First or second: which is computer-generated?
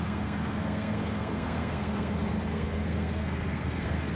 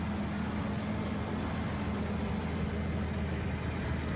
first